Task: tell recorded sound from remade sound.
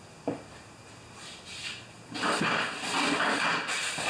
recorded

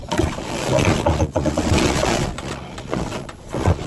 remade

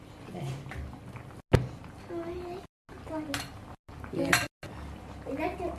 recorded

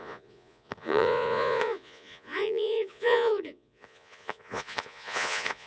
remade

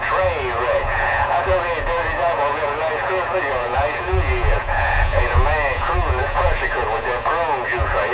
remade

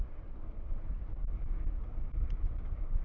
recorded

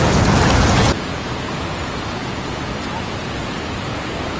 remade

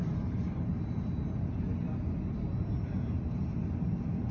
recorded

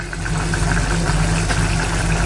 recorded